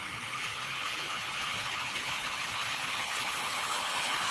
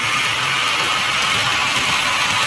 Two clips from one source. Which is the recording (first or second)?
second